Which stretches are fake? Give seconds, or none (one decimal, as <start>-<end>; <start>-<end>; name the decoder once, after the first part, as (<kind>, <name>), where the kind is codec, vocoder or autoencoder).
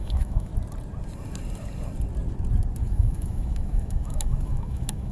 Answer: 0.0-0.5 (autoencoder, DAC-VAE); 2.8-5.1